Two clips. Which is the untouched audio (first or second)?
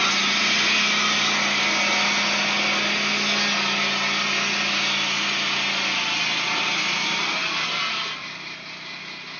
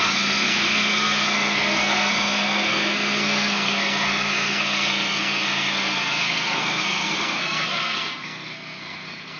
first